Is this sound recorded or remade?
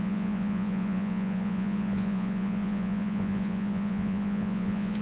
remade